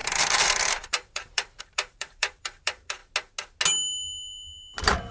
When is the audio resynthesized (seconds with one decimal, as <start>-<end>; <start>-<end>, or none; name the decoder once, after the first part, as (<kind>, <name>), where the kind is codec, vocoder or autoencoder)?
0.0-3.0 (vocoder, BigVGAN v2)